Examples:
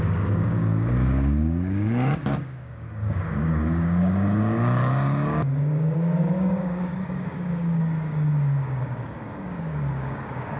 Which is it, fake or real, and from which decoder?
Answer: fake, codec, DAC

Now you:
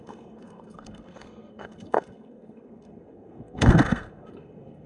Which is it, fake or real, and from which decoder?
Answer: fake, codec, SNAC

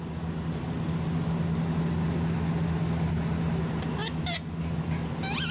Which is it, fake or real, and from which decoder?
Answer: real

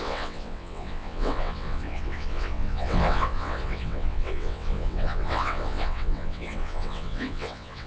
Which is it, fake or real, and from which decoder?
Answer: fake, vocoder, WaveNeXt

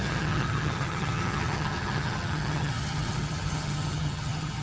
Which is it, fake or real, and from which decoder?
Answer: fake, vocoder, HiFi-GAN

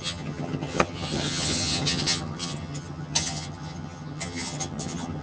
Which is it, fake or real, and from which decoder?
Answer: fake, vocoder, HiFi-GAN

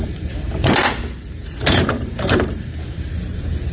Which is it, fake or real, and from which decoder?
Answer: fake, vocoder, BigVGAN v2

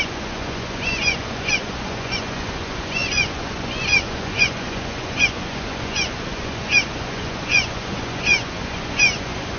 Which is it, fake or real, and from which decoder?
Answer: fake, vocoder, Vocos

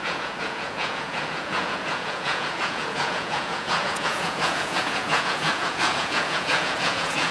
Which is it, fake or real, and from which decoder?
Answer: fake, vocoder, Vocos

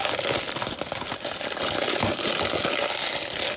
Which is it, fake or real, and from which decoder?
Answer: real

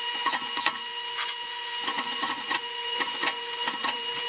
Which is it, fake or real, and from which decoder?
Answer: fake, vocoder, Vocos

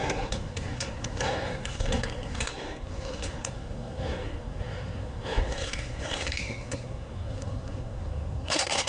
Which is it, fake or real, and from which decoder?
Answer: fake, codec, SNAC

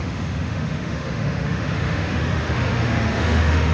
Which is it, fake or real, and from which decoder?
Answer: fake, autoencoder, DAC-VAE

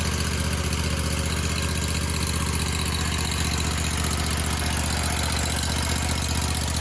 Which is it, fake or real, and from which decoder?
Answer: real